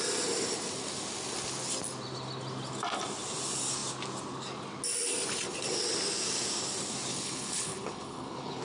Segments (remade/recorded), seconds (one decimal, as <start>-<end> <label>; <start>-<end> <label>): 0.0-7.1 recorded; 7.1-8.6 remade